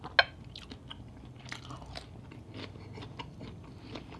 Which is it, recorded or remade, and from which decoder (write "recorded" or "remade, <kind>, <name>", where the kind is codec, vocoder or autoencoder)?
recorded